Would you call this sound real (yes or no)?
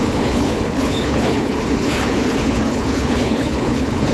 no